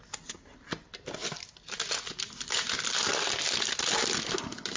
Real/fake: real